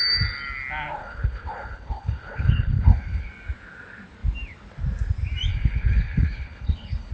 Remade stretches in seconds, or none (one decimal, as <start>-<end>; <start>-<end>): 1.0-3.3; 5.5-7.1